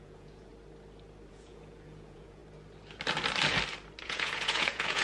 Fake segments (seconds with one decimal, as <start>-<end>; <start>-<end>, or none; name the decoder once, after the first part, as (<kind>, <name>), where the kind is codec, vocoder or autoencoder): 0.0-0.5 (vocoder, Vocos); 1.3-2.4; 4.0-5.0